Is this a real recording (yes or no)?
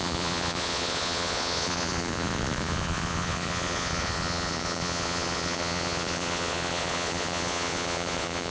no